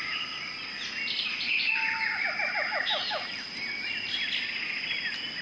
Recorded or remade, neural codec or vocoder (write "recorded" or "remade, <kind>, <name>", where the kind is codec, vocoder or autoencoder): recorded